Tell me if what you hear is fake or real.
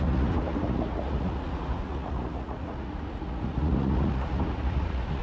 fake